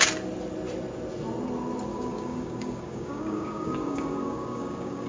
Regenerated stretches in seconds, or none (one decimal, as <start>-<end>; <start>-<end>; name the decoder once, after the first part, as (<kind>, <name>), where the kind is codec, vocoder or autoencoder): 1.9-5.1 (codec, DAC)